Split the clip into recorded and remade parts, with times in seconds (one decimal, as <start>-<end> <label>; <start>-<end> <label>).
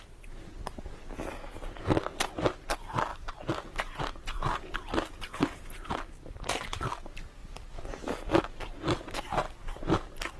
0.0-3.1 recorded; 3.1-5.1 remade; 5.1-7.4 recorded; 7.4-9.0 remade; 9.0-10.4 recorded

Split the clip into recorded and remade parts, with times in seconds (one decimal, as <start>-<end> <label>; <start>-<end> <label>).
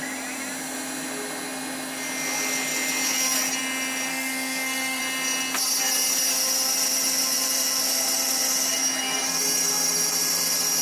0.0-4.1 recorded; 4.1-5.0 remade; 5.0-10.8 recorded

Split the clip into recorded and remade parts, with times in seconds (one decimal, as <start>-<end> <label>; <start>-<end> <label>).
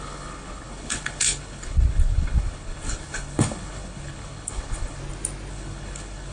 0.0-5.0 remade; 5.0-5.5 recorded; 5.5-6.3 remade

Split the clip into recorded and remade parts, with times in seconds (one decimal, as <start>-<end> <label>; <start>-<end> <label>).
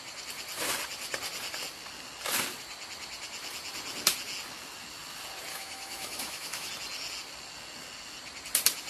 0.0-5.5 recorded; 5.5-6.7 remade; 6.7-8.9 recorded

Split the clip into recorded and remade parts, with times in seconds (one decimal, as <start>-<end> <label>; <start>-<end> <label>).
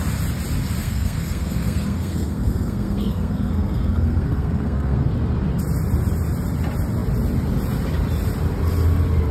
0.0-0.8 recorded; 0.8-5.1 remade; 5.1-9.3 recorded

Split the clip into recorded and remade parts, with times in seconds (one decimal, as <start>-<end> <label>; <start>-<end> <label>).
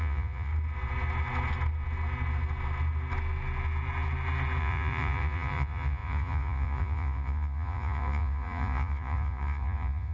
0.0-0.5 remade; 0.5-4.6 recorded; 4.6-10.1 remade